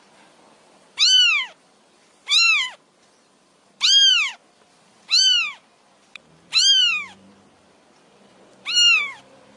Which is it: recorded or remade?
remade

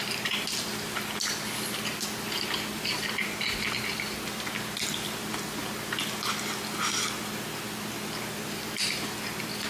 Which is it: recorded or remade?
recorded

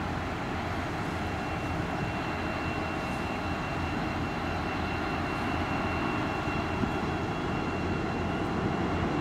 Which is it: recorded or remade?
recorded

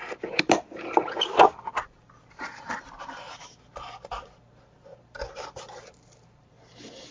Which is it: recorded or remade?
remade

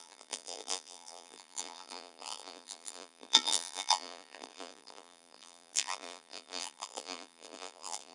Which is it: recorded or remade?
remade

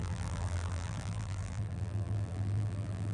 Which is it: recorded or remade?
remade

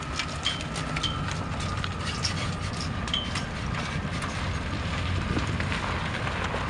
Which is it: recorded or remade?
remade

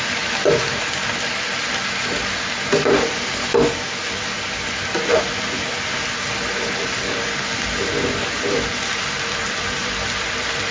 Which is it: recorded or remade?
recorded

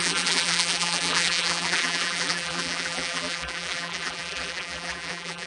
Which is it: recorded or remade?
remade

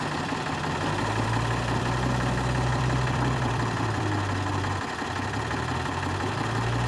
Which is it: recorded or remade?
remade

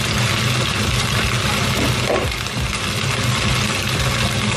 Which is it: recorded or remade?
recorded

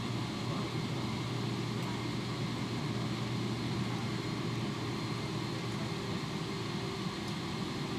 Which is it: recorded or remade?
recorded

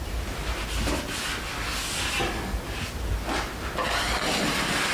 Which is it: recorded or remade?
recorded